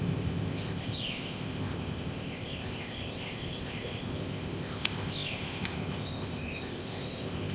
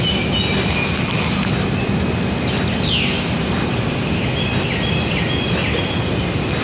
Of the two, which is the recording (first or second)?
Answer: second